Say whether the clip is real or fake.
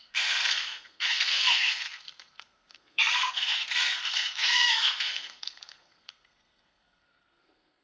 fake